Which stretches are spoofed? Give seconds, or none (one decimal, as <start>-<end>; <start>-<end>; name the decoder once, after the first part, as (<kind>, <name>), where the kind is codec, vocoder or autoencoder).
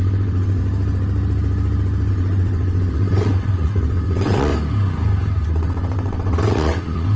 0.0-0.6 (vocoder, WaveNeXt); 2.1-4.5; 5.5-7.2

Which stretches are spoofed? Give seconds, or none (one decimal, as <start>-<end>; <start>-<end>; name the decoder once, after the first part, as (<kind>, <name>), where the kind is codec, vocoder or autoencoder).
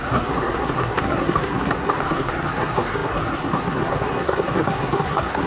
0.0-5.5 (codec, SNAC)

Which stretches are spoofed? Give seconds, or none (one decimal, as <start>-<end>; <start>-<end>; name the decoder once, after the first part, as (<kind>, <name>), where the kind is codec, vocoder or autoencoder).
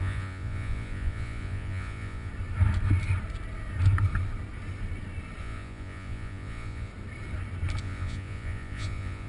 0.0-2.3 (vocoder, Vocos); 5.4-6.9; 7.8-9.3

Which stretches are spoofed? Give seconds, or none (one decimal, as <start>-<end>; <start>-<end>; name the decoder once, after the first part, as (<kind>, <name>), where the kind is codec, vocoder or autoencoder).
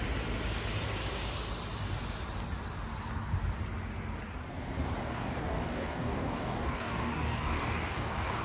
5.1-8.4 (codec, DAC)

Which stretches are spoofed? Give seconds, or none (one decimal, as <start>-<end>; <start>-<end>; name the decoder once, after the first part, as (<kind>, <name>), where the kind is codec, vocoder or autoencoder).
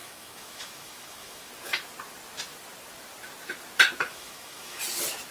0.0-1.5 (autoencoder, DAC-VAE); 4.1-4.8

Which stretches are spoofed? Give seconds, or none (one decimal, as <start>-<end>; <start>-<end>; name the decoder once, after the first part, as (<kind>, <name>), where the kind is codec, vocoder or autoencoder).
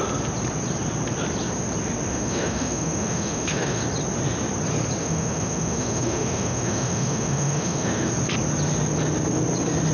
2.1-3.8 (autoencoder, DAC-VAE); 5.0-8.1